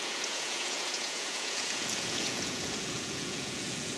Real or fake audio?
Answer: fake